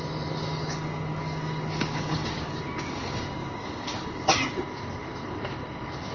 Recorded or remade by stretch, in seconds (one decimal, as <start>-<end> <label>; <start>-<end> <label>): 0.0-0.5 recorded; 0.5-4.2 remade; 4.2-6.1 recorded